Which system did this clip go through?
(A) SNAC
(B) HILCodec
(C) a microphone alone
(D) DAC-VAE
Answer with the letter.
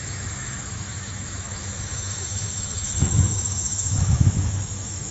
D